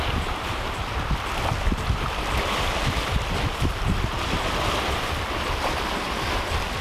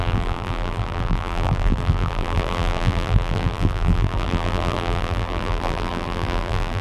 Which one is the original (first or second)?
first